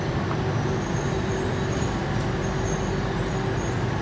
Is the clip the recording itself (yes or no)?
yes